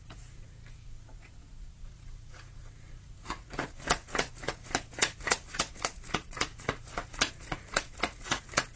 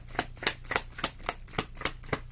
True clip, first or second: second